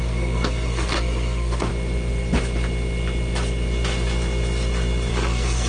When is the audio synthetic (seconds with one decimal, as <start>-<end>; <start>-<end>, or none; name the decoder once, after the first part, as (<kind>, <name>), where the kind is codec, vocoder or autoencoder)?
0.0-1.7 (codec, SNAC); 5.1-5.7